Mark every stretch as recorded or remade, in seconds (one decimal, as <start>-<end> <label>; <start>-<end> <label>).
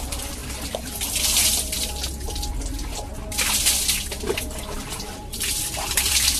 0.0-0.4 remade; 0.4-4.2 recorded; 4.2-6.4 remade